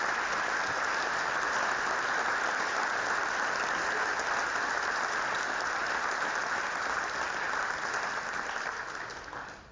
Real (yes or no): yes